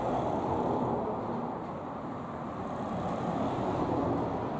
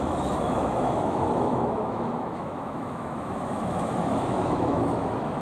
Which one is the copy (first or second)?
second